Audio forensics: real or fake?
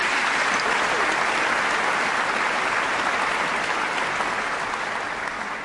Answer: real